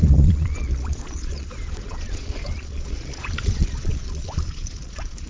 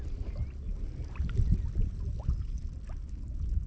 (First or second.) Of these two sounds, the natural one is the second